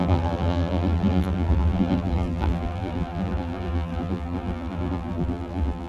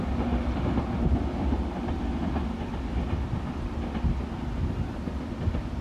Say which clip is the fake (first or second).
first